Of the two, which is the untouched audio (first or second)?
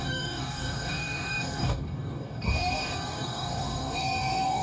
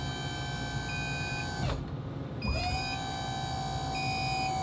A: second